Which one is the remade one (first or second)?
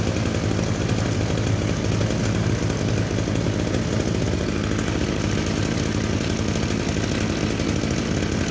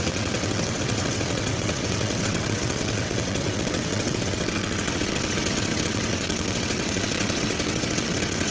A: second